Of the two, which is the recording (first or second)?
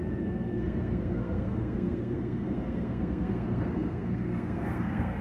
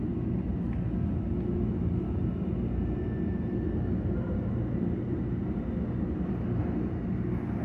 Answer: second